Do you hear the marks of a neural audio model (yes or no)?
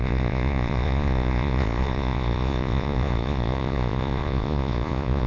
yes